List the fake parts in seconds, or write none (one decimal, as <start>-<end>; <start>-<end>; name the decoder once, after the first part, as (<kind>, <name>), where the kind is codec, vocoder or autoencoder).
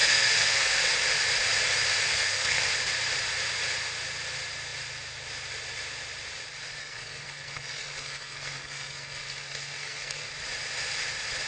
0.0-0.8 (codec, SNAC); 2.0-2.7; 6.8-10.3